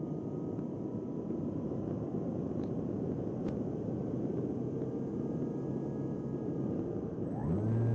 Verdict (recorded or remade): recorded